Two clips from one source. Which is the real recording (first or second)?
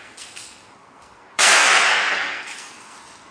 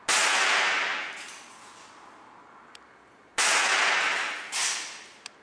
second